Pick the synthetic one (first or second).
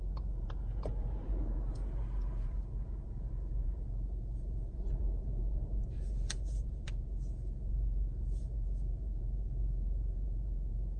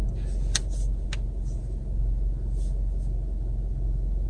first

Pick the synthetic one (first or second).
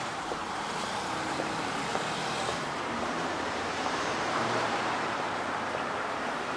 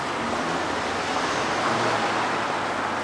first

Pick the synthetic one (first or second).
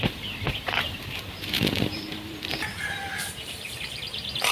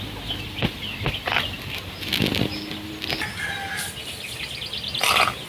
first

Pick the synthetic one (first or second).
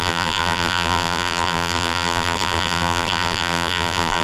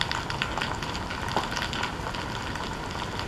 first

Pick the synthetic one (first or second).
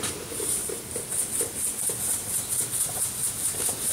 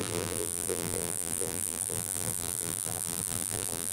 second